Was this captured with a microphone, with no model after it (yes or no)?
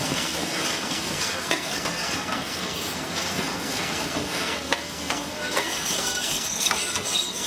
no